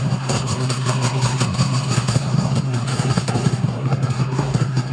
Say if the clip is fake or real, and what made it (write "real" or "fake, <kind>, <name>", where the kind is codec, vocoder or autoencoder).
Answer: fake, codec, SNAC